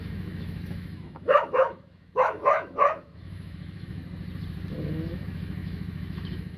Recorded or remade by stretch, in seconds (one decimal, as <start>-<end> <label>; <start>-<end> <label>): 0.0-4.0 remade; 4.0-4.8 recorded; 4.8-6.6 remade

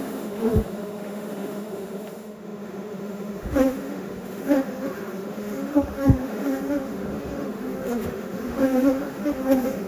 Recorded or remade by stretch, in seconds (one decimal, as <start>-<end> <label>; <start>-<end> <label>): 0.0-9.9 remade

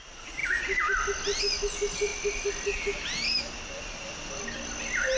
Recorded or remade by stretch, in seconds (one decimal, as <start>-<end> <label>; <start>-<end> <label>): 0.0-5.2 recorded

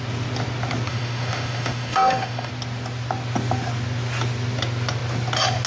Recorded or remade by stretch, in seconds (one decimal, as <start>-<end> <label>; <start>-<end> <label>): 0.0-0.9 recorded; 0.9-2.5 remade; 2.5-5.7 recorded